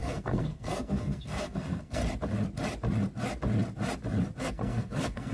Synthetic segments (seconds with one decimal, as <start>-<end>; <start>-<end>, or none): 0.0-2.0; 4.4-5.3